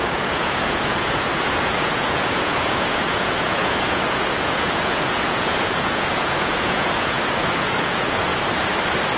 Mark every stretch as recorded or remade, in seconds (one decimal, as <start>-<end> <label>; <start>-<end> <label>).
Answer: 0.0-8.3 remade; 8.3-9.2 recorded